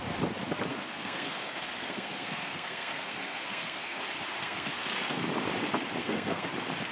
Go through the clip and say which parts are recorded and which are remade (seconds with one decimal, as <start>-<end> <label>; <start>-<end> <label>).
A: 0.0-0.7 recorded; 0.7-4.0 remade; 4.0-4.4 recorded; 4.4-5.2 remade; 5.2-6.0 recorded; 6.0-6.5 remade; 6.5-6.9 recorded